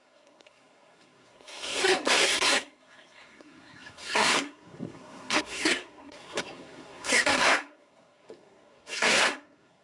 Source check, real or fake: fake